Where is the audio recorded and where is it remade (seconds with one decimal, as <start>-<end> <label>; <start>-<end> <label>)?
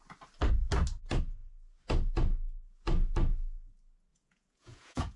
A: 0.0-4.1 recorded; 4.1-5.2 remade